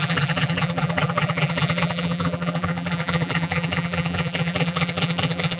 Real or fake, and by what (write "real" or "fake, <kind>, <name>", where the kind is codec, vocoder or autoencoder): fake, vocoder, BigVGAN v2